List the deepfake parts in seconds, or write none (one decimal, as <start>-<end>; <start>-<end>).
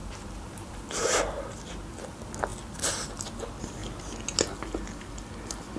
0.0-1.4